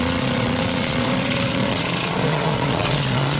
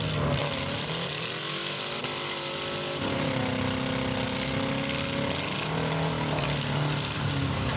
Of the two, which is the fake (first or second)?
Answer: first